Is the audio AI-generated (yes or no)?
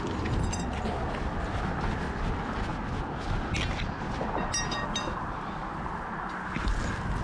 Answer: no